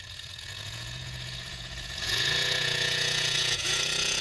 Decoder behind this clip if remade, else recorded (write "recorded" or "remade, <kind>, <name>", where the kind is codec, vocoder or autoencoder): remade, vocoder, Vocos